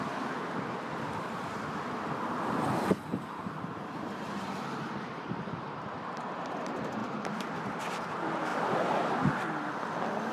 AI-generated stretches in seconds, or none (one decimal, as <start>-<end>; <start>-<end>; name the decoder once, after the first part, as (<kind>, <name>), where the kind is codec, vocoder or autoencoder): 7.0-7.8 (vocoder, BigVGAN v2)